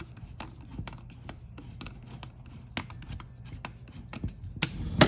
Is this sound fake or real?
real